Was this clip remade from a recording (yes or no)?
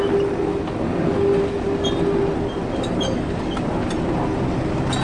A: no